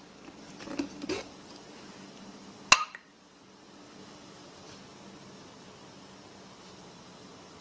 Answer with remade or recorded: recorded